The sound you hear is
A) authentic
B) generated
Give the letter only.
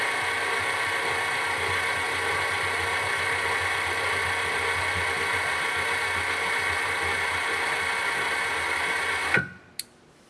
A